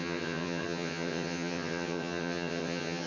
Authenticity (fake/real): fake